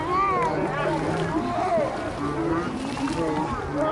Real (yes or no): yes